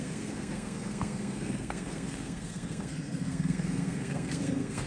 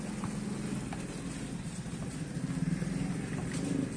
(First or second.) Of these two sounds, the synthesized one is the first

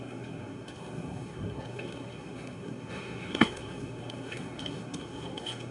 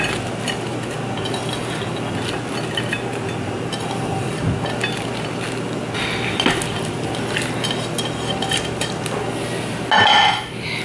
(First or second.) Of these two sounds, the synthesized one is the first